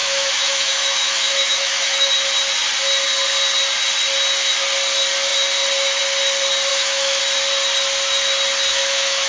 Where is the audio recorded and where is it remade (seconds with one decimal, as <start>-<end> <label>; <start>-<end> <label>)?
0.0-2.1 remade; 2.1-6.7 recorded; 6.7-7.2 remade; 7.2-8.7 recorded; 8.7-9.3 remade